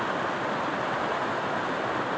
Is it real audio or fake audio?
real